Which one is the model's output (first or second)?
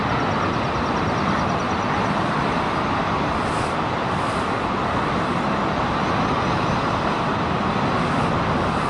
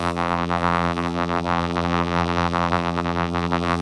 second